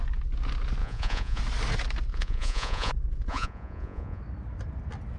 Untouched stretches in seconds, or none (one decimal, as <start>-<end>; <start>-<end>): 0.0-0.8; 1.4-2.1; 2.9-3.3; 4.2-5.2